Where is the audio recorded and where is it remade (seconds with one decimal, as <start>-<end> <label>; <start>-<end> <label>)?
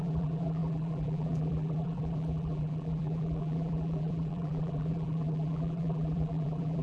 0.0-6.8 remade